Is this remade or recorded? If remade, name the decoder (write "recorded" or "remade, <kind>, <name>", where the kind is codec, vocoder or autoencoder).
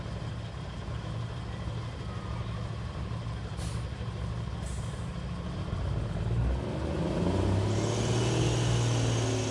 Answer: recorded